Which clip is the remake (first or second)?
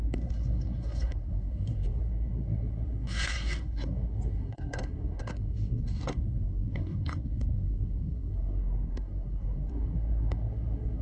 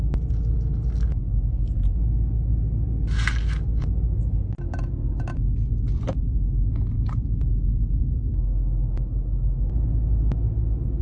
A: first